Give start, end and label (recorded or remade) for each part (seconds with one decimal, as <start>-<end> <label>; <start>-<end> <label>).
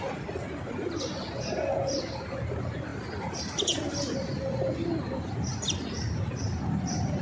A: 0.0-7.2 recorded